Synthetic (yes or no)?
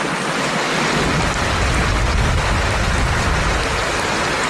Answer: no